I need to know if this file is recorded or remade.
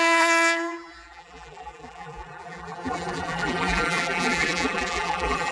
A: remade